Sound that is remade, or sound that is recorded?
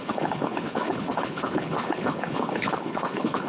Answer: remade